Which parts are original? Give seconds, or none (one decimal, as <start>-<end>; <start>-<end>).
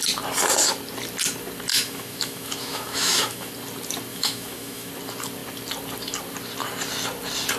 0.0-1.7; 3.5-4.1; 4.9-7.6